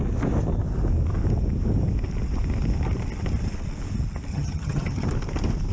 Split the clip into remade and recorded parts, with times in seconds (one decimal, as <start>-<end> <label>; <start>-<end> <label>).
0.0-4.3 recorded; 4.3-5.1 remade; 5.1-5.7 recorded